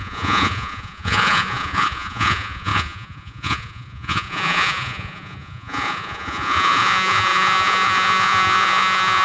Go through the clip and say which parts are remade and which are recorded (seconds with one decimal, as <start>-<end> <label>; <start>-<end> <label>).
0.0-9.2 remade